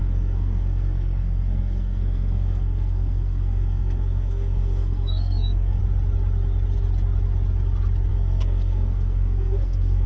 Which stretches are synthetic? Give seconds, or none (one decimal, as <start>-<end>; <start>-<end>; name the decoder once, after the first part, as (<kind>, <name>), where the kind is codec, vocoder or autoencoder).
0.0-5.8 (codec, SNAC); 8.1-10.1